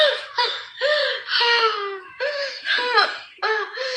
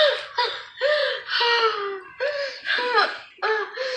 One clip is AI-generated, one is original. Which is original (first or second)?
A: second